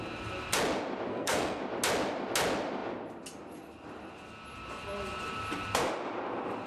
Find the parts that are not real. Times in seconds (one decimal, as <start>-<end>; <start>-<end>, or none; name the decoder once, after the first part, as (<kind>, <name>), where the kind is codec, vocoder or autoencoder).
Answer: 1.1-1.6 (codec, SNAC)

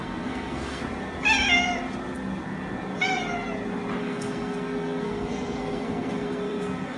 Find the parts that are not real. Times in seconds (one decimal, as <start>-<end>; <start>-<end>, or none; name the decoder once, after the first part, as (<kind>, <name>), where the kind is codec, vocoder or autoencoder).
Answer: 0.0-0.8 (codec, SNAC); 4.0-7.0

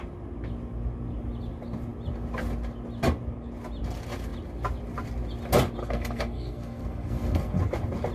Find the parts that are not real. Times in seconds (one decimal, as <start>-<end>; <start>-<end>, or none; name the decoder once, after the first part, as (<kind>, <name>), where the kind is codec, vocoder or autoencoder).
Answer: 5.8-7.6 (codec, SNAC)

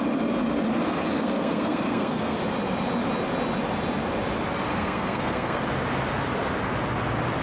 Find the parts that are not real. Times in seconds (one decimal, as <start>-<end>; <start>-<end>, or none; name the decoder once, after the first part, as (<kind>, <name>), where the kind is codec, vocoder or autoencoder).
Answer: 1.1-2.4 (codec, SNAC); 4.7-5.6

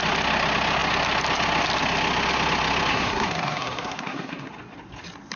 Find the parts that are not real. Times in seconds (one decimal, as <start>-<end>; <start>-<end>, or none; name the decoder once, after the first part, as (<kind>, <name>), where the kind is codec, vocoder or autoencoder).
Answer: 2.9-4.5 (codec, SNAC)